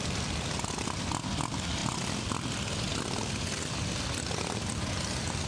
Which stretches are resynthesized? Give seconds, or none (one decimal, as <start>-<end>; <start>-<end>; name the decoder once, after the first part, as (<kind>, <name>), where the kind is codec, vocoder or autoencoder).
none